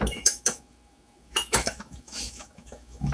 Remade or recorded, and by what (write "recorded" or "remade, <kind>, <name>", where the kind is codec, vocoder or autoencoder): remade, autoencoder, DAC-VAE